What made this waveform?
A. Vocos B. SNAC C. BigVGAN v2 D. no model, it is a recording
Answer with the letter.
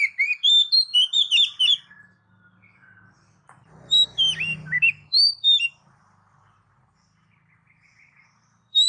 C